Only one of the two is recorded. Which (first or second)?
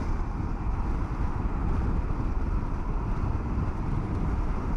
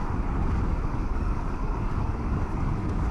first